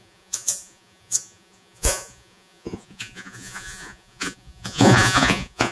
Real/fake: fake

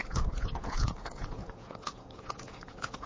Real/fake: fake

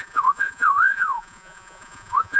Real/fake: fake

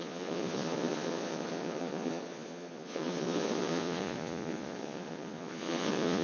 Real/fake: fake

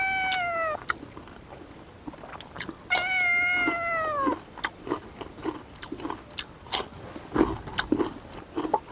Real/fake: real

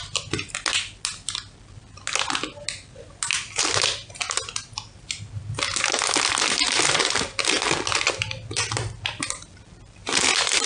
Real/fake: real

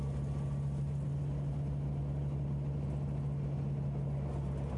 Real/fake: real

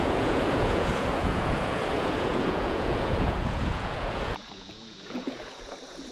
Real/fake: fake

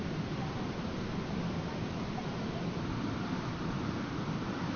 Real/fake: real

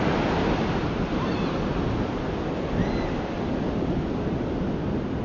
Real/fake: real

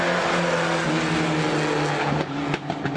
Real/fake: real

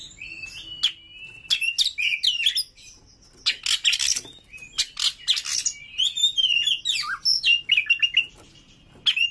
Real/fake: real